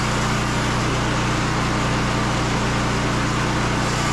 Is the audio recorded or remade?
recorded